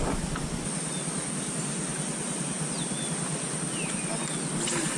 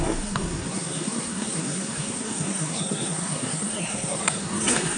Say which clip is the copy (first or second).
second